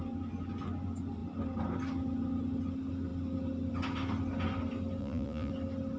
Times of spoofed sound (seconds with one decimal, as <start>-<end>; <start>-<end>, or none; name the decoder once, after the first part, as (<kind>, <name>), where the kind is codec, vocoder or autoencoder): 5.0-5.5 (vocoder, Vocos)